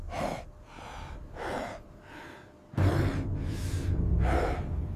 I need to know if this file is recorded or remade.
remade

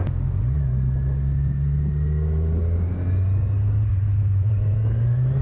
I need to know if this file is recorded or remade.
recorded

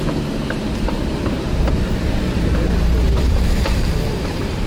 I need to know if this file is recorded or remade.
remade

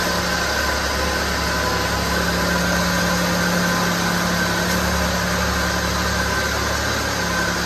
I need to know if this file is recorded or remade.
recorded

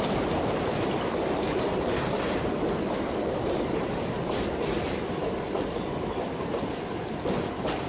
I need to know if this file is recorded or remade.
remade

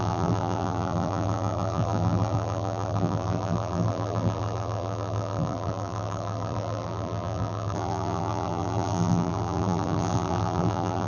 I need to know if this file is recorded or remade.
remade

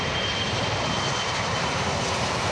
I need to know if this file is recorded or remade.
remade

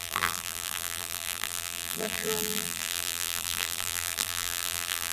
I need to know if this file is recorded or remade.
remade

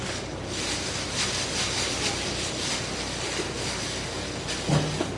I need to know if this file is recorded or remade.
recorded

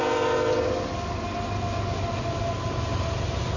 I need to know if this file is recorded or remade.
recorded